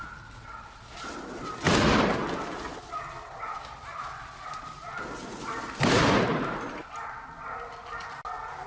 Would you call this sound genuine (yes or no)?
yes